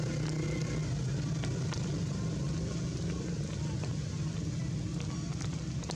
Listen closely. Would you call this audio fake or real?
real